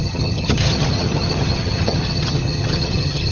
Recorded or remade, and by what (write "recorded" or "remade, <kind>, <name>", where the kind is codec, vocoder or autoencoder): remade, vocoder, HiFi-GAN